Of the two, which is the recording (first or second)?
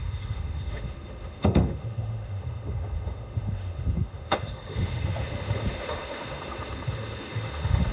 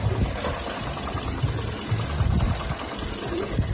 second